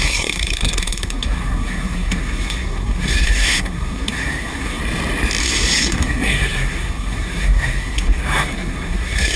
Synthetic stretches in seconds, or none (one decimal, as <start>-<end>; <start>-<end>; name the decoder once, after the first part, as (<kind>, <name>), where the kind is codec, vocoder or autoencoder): 0.0-4.8 (codec, SNAC); 5.4-9.4